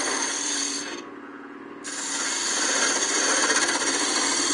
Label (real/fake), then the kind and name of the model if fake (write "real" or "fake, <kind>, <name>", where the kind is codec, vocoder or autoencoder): fake, vocoder, BigVGAN v2